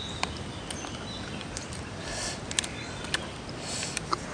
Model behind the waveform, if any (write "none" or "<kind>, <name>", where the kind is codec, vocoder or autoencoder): vocoder, BigVGAN v2